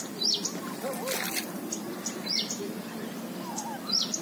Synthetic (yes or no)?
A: no